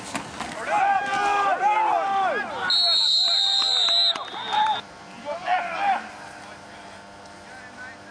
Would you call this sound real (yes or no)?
yes